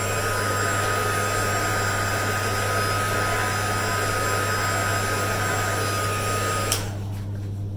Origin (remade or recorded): recorded